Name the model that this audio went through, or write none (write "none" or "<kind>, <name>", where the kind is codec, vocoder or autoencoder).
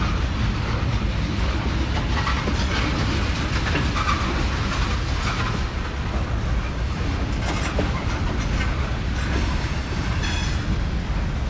none